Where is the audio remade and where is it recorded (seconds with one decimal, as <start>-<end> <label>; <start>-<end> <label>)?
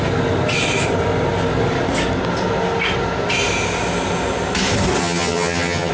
0.0-5.0 recorded; 5.0-5.9 remade